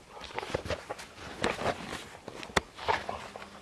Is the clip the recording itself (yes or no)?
yes